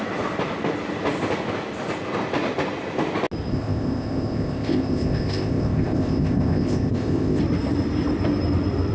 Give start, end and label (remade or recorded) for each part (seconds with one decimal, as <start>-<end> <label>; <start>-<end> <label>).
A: 0.0-3.5 recorded; 3.5-7.4 remade; 7.4-8.9 recorded